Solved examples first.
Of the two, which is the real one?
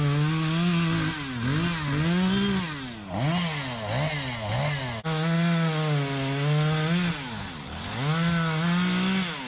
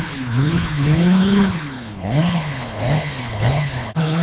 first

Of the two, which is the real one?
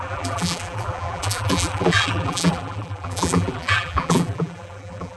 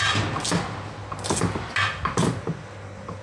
second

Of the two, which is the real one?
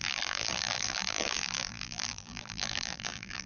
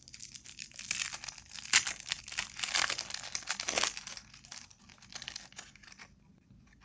second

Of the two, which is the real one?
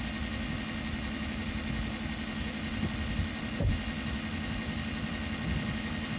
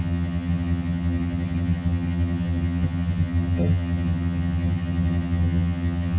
first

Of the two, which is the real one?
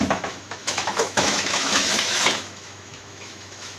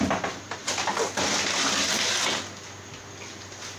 second